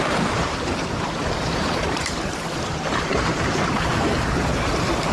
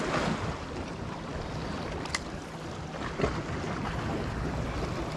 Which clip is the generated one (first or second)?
first